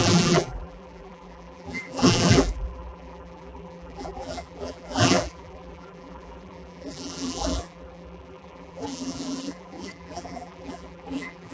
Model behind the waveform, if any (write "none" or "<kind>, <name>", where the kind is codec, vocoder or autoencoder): vocoder, BigVGAN v2